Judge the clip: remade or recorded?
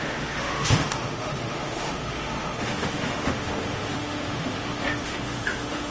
remade